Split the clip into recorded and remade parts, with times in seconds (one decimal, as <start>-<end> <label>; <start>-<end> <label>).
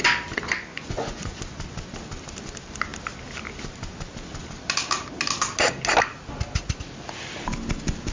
0.0-0.7 recorded; 0.7-1.4 remade; 1.4-8.1 recorded